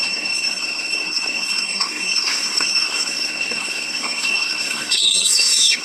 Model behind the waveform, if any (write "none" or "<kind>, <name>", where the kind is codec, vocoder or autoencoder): codec, SNAC